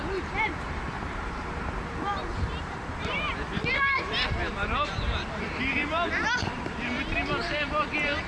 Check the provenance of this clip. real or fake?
fake